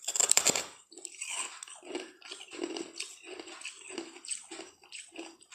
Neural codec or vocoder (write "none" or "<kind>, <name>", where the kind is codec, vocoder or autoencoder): none